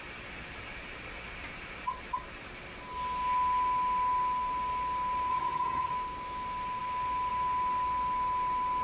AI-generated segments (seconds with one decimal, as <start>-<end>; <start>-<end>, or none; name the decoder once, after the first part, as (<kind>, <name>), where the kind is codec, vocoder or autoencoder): 5.3-5.9 (vocoder, HiFi-GAN)